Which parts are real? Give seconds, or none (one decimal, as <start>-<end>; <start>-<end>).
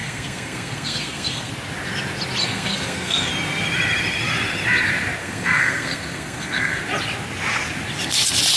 1.5-2.4; 3.3-5.2; 6.8-8.6